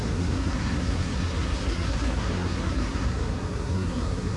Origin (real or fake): fake